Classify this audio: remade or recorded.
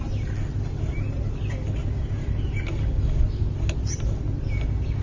recorded